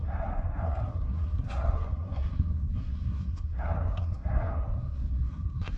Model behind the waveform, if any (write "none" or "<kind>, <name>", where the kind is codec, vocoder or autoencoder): codec, SNAC